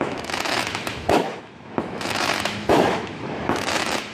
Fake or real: fake